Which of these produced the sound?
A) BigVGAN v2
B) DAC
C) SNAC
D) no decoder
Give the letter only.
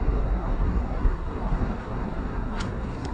C